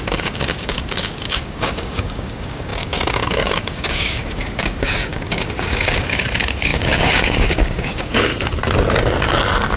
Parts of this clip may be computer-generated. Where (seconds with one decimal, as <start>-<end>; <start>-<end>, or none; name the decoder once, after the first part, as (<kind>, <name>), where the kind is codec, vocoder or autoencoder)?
0.0-8.3 (codec, DAC)